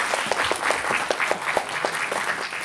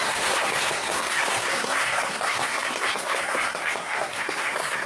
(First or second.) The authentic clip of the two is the first